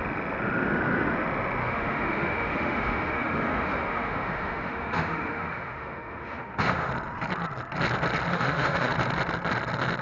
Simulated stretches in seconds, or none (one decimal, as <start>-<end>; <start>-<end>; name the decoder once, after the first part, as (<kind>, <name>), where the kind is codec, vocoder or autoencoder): 1.6-6.9 (autoencoder, DAC-VAE); 8.3-8.9

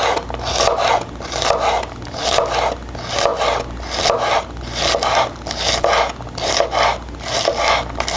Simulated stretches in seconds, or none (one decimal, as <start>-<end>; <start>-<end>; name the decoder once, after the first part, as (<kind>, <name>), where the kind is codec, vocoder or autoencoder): none